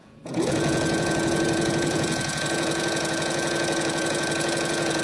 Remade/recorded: remade